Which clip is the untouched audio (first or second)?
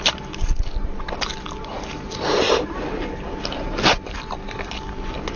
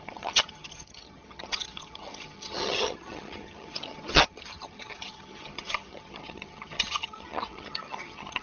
first